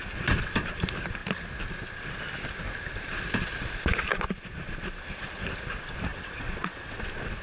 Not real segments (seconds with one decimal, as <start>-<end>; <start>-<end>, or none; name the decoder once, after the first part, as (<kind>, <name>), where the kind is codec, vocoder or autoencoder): 6.1-7.0 (vocoder, WaveNeXt)

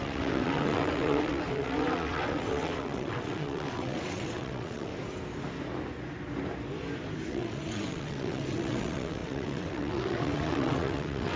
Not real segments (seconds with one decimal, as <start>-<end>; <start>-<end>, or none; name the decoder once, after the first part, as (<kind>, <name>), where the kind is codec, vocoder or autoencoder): 0.0-4.9 (vocoder, WaveNeXt); 7.3-11.4

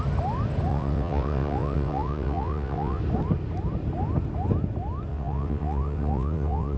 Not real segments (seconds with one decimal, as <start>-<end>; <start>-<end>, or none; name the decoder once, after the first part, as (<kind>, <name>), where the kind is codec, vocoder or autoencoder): 0.7-3.0 (vocoder, WaveNeXt); 5.1-6.8

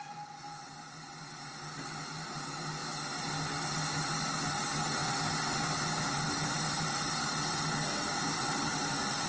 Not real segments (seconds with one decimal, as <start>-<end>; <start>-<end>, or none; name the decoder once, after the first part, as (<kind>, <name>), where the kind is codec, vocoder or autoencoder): none